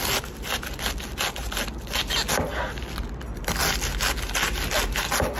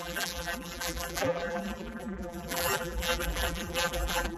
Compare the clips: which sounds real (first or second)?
first